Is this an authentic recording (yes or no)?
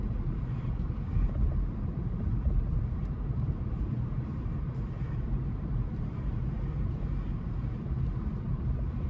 no